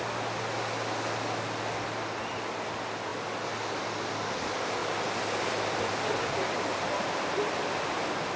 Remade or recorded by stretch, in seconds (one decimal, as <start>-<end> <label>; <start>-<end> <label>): 0.0-4.8 recorded; 4.8-6.3 remade; 6.3-8.4 recorded